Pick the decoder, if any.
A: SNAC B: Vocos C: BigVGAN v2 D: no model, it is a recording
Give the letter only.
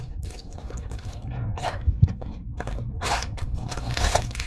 A